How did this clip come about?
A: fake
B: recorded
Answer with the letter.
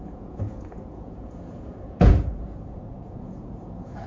A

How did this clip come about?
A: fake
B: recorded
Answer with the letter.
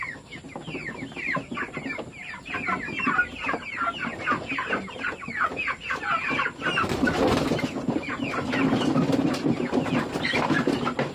B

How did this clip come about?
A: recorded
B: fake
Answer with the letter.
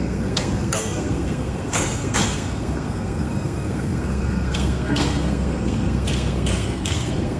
B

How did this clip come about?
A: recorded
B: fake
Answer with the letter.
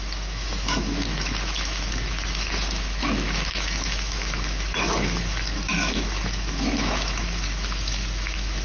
B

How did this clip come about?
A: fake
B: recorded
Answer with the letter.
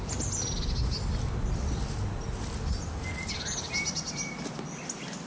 B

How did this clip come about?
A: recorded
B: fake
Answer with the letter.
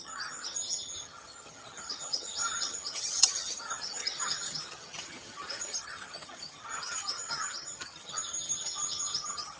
B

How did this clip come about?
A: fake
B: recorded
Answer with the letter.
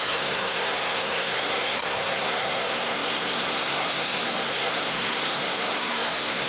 A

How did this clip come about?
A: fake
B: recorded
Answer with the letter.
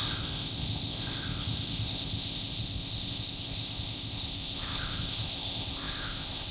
A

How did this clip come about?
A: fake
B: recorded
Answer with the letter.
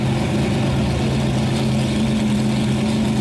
B